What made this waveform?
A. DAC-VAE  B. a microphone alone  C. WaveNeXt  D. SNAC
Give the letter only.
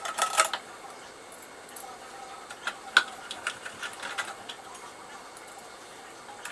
B